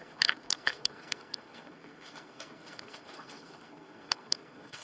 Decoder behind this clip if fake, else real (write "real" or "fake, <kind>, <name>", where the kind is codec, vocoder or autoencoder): fake, codec, SNAC